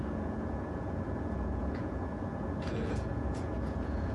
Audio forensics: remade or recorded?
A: remade